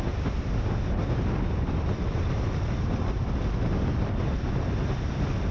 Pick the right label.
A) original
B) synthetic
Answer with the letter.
A